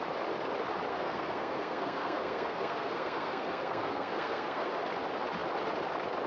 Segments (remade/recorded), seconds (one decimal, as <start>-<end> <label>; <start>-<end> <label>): 0.0-0.9 recorded; 0.9-4.7 remade; 4.7-6.3 recorded